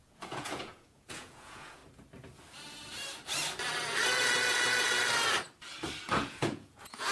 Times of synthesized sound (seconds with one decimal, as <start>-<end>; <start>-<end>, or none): 0.0-1.8; 6.1-7.1